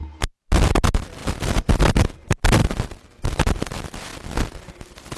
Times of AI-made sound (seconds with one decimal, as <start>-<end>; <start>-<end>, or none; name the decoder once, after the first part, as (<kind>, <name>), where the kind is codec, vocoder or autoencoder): none